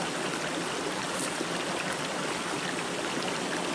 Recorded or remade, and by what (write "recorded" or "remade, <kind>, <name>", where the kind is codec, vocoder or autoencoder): recorded